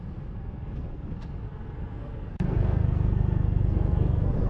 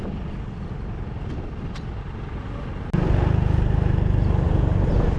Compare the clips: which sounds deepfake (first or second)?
first